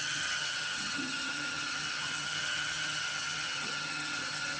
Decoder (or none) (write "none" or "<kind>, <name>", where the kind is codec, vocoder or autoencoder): vocoder, HiFi-GAN